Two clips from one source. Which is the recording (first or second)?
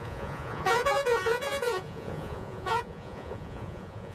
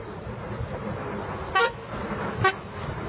second